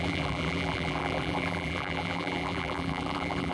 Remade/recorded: remade